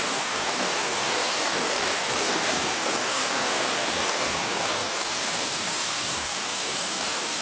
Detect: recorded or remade remade